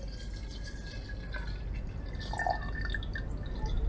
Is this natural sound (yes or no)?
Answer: yes